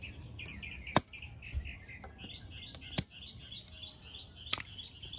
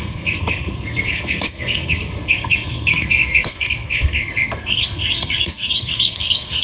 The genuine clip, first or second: first